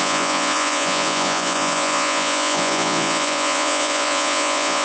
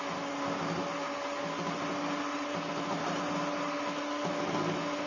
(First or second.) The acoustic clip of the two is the second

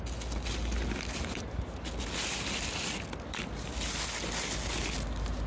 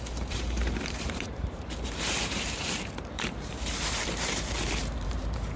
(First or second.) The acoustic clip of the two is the first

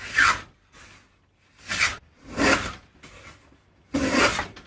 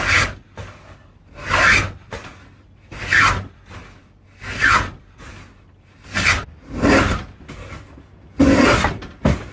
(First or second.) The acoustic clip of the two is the second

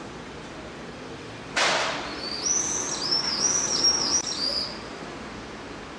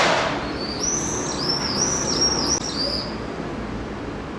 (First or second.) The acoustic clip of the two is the second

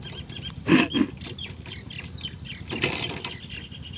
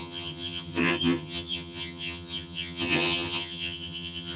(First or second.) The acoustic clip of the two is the first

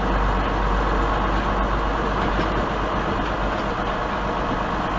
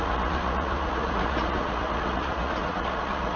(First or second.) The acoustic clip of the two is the first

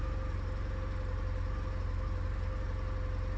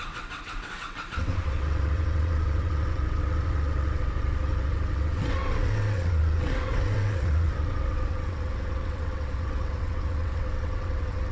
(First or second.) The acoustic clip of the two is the first